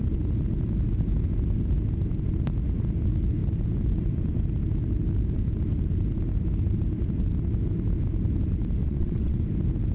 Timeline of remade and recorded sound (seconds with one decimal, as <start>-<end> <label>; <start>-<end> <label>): 0.0-8.8 recorded; 8.8-9.4 remade; 9.4-9.9 recorded